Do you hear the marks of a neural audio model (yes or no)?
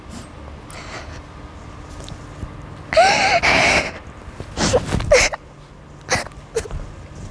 no